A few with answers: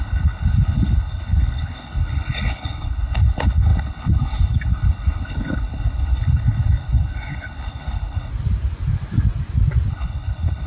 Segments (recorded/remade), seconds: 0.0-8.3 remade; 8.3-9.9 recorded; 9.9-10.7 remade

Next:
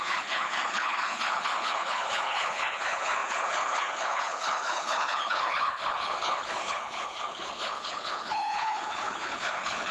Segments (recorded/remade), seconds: 0.0-9.9 remade